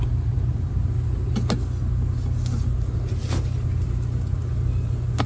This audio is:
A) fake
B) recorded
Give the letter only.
B